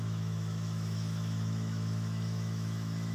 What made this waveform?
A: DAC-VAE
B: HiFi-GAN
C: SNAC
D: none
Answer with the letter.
A